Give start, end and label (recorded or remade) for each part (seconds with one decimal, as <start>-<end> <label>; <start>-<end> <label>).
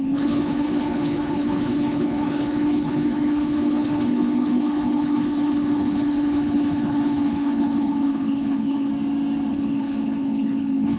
0.0-8.9 remade; 8.9-9.5 recorded; 9.5-11.0 remade